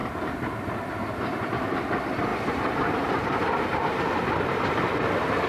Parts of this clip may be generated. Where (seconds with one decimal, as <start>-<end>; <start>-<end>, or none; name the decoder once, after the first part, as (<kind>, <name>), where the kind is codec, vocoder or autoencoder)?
none